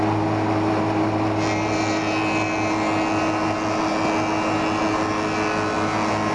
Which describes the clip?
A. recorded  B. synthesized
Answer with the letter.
A